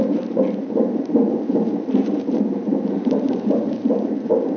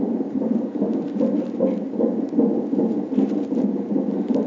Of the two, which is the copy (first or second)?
first